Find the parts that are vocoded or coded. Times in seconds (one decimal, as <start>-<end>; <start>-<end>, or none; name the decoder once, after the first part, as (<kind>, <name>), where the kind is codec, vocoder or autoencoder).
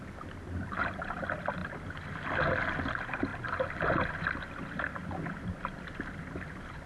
none